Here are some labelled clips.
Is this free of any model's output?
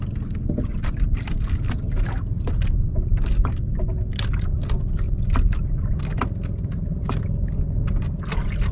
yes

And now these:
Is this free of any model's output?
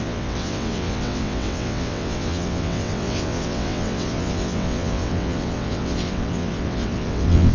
no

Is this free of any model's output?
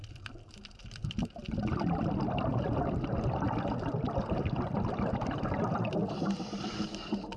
no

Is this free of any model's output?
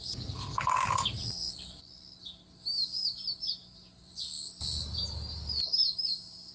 yes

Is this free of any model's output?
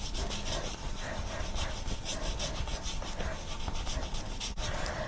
yes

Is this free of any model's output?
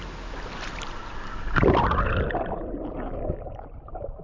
yes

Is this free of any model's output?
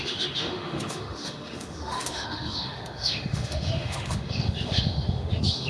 no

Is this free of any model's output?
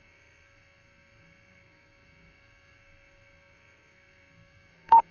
no